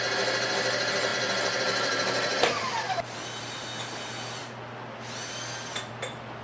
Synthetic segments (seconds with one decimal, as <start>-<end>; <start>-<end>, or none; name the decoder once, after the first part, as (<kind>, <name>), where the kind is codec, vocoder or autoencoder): 1.1-3.8 (vocoder, BigVGAN v2)